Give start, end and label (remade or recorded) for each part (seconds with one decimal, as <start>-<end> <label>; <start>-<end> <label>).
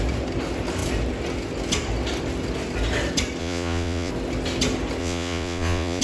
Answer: 0.0-3.4 recorded; 3.4-4.1 remade; 4.1-5.0 recorded; 5.0-6.0 remade